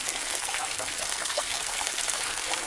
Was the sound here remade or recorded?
remade